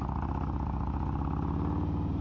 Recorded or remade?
recorded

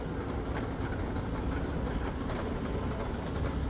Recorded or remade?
recorded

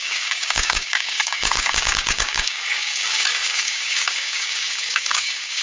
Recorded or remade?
remade